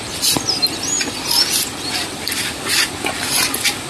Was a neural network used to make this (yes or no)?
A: no